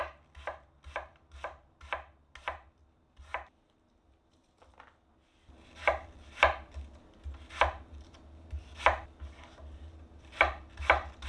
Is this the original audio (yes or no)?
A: yes